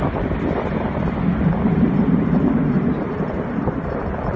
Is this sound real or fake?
real